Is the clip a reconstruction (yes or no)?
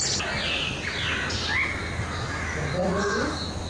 no